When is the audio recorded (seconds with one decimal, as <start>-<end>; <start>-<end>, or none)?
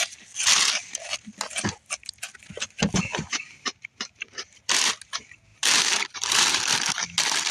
0.0-3.1; 4.6-5.5; 6.7-7.5